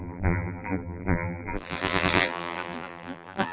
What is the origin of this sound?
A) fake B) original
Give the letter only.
A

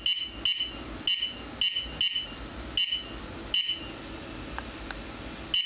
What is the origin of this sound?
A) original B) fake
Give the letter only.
A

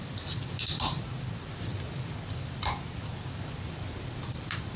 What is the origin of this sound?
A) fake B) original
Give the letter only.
A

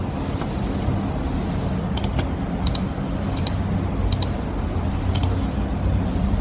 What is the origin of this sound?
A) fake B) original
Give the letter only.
B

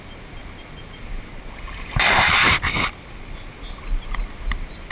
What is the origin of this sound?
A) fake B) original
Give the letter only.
B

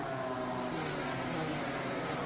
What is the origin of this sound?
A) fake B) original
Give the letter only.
B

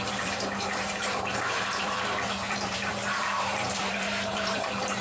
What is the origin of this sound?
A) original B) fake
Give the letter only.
B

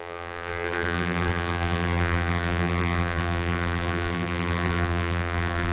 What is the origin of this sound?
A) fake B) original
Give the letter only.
A